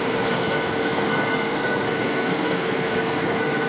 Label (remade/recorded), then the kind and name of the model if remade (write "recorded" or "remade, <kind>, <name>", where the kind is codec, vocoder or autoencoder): remade, codec, SNAC